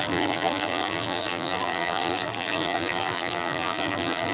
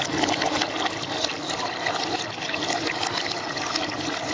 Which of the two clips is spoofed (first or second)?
first